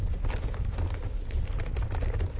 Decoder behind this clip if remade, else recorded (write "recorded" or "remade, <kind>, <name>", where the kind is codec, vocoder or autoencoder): recorded